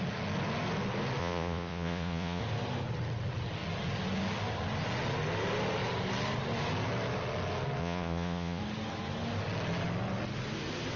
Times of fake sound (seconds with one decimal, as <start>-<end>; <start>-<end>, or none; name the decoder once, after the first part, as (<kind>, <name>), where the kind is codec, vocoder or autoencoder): 1.2-2.4 (vocoder, Vocos); 7.8-8.6